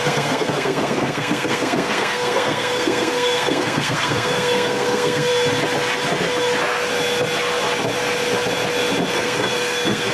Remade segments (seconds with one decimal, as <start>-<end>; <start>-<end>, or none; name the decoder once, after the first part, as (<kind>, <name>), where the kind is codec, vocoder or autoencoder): 0.0-5.3 (codec, SNAC); 9.1-10.1